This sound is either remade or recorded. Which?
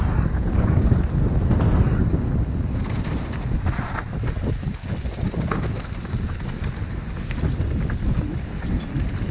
recorded